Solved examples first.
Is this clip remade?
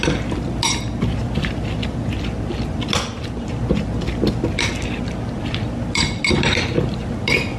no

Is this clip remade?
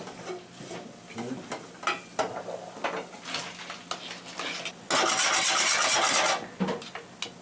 no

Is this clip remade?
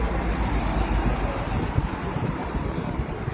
no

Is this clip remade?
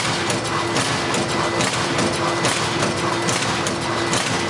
no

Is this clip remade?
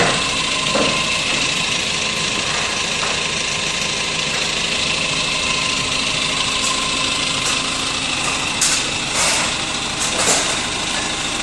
no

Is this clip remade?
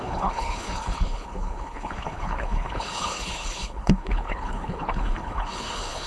yes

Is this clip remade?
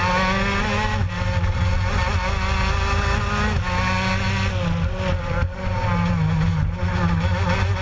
no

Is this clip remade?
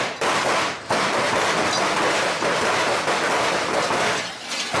no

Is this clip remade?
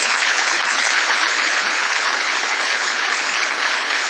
yes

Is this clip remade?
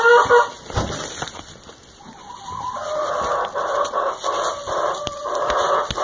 no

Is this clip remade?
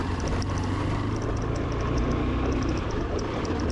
no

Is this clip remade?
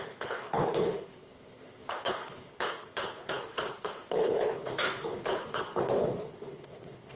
yes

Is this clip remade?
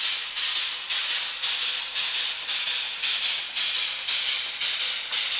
no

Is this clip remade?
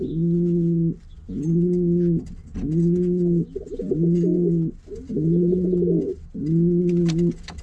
no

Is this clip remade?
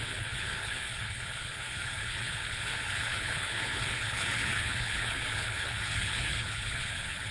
yes